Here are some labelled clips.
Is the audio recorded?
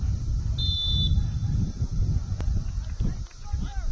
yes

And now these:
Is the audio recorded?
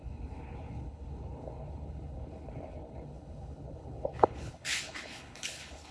no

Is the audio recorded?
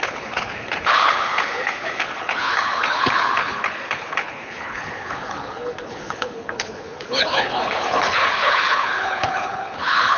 no